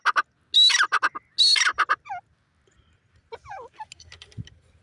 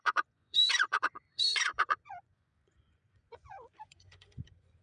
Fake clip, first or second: second